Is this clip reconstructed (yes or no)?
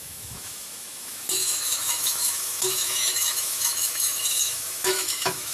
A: yes